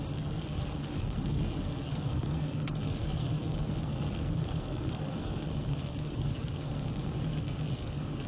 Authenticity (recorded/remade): remade